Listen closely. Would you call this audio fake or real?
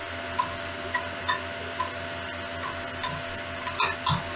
real